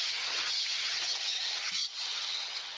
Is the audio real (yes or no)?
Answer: no